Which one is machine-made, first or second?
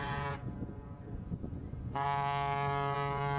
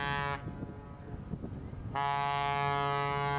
first